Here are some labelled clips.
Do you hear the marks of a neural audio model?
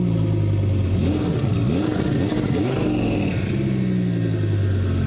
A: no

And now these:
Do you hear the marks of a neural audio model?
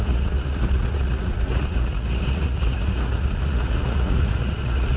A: yes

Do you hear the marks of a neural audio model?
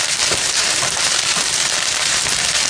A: yes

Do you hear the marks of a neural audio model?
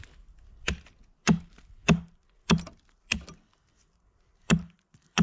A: no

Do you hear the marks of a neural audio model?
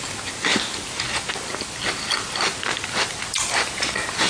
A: no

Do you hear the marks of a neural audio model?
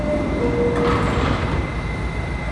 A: no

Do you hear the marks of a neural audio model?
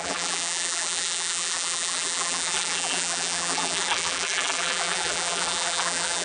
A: yes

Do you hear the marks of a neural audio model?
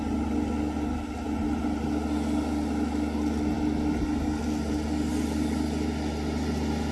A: no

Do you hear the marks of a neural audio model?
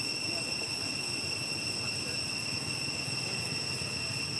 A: no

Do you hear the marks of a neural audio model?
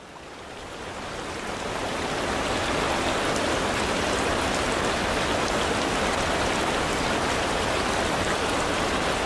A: no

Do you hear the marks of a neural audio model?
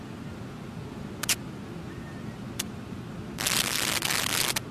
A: no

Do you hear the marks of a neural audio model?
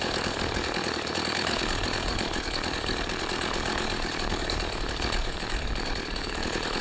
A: yes